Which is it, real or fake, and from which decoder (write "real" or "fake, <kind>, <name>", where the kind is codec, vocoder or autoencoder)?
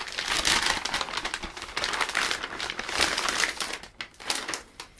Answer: real